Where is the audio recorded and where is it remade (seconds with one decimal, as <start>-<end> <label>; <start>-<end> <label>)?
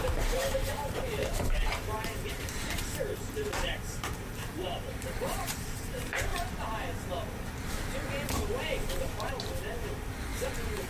0.0-6.3 remade; 6.3-9.3 recorded; 9.3-10.9 remade